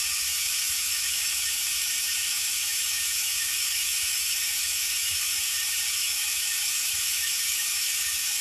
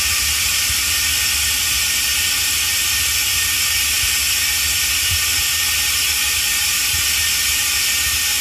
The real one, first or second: second